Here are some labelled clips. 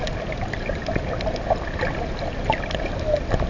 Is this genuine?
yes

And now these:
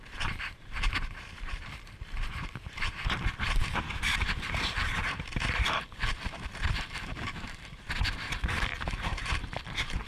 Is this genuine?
no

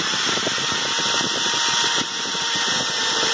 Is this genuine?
no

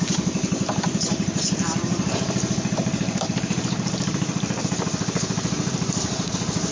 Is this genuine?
no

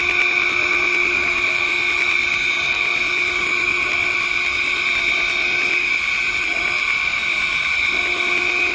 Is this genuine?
yes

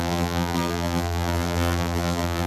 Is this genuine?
no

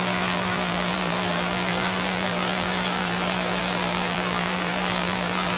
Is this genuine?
no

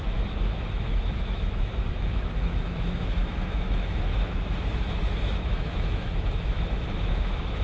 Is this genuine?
no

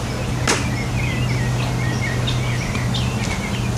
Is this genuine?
yes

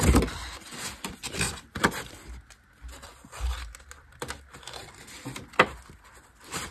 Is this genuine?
yes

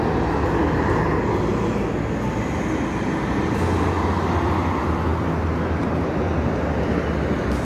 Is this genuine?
yes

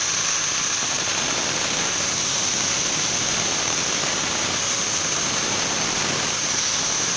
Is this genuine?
yes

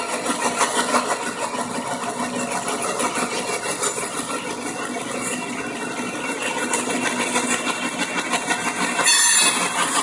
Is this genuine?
yes